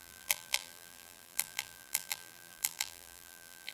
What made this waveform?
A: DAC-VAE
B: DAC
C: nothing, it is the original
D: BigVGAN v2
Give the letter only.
D